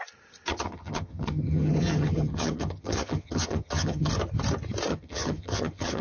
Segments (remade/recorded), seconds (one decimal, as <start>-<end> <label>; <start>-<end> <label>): 0.0-0.5 recorded; 0.5-4.1 remade; 4.1-4.9 recorded; 4.9-6.0 remade